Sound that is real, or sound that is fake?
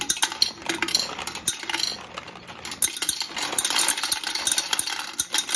real